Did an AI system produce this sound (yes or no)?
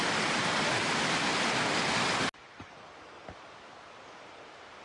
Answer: no